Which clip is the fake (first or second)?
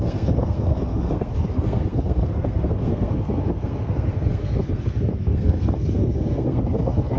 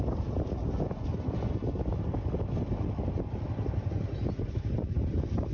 first